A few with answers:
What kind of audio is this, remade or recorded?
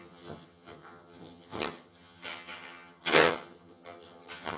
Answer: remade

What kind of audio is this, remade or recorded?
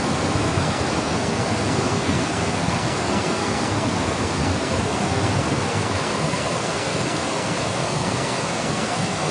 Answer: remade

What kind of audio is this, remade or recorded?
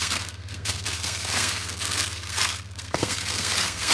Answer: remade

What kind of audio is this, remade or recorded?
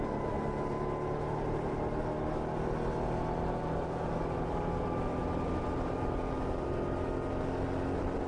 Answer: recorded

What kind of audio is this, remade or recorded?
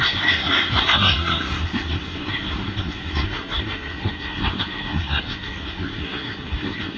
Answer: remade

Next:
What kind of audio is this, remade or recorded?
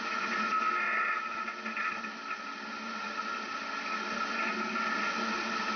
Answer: recorded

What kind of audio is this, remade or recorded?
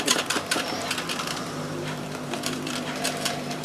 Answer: remade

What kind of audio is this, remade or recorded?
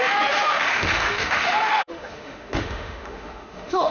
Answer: remade